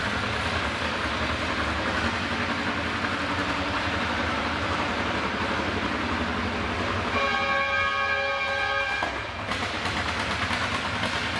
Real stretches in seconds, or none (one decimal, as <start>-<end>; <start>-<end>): 0.0-3.4; 5.4-11.4